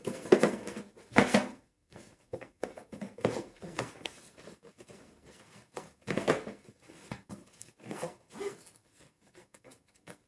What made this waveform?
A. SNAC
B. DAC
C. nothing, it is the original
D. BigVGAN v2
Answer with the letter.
A